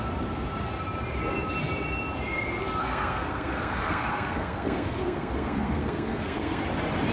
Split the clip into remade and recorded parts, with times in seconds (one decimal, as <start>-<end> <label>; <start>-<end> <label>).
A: 0.0-2.8 recorded; 2.8-6.6 remade; 6.6-7.1 recorded